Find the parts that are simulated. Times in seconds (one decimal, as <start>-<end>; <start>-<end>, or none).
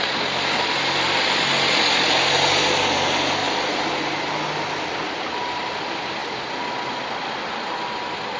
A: none